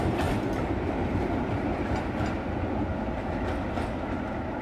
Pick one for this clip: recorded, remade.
recorded